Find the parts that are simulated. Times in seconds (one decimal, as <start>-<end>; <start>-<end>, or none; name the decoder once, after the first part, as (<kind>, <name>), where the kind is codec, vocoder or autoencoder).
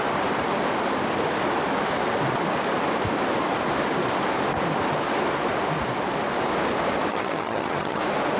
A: 7.1-8.0 (vocoder, HiFi-GAN)